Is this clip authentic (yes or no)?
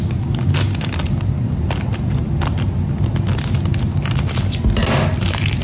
yes